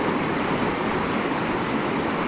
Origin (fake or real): real